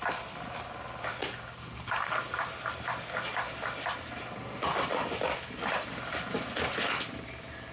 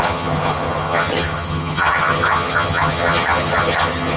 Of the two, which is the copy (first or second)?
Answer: second